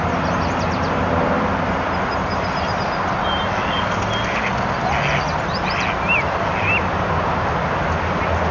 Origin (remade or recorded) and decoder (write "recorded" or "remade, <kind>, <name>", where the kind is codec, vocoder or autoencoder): recorded